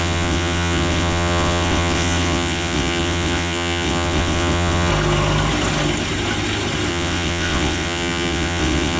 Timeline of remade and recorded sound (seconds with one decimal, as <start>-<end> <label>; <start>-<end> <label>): 0.0-4.9 remade; 4.9-6.9 recorded; 6.9-9.0 remade